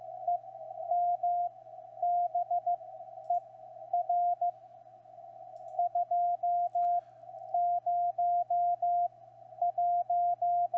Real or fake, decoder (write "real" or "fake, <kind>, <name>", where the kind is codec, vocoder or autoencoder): real